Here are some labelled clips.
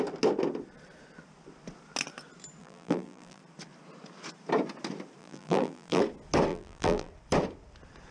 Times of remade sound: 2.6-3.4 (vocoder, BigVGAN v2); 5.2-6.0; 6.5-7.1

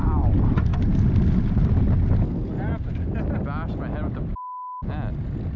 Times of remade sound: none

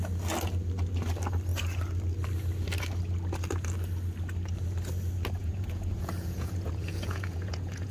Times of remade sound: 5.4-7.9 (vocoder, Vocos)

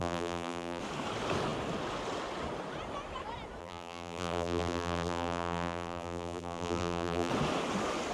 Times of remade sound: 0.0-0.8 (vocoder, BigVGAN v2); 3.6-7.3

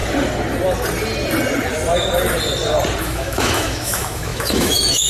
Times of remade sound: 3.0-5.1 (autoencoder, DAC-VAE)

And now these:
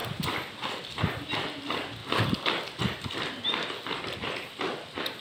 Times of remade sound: none

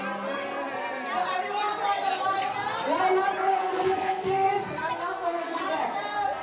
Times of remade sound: 3.6-5.6 (codec, SNAC)